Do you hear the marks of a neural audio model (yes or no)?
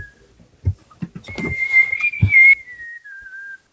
no